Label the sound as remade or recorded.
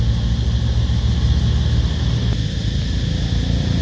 recorded